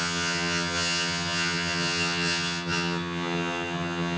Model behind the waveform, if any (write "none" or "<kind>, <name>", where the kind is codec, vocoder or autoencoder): vocoder, HiFi-GAN